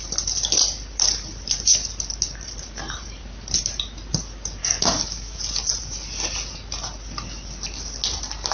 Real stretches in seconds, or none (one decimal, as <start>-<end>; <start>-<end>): 0.0-4.6; 5.4-8.5